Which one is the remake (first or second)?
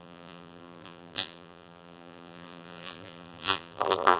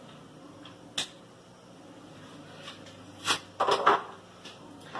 first